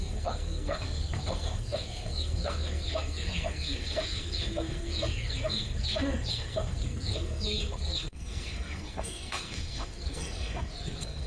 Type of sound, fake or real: fake